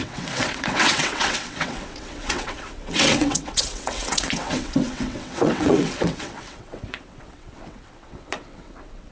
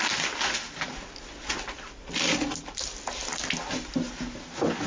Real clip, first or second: second